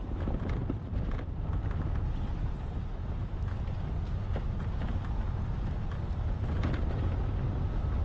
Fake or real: real